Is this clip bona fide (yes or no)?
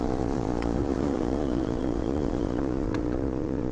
no